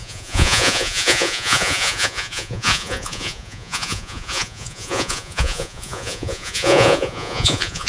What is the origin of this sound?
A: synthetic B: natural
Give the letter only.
A